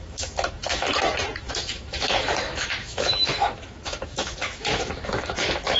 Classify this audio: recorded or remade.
remade